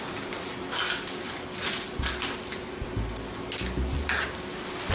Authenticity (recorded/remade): recorded